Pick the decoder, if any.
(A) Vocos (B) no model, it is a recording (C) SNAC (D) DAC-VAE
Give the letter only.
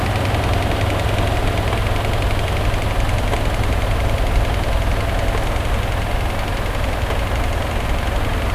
B